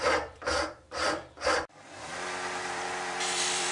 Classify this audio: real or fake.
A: fake